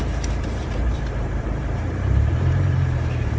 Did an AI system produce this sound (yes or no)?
yes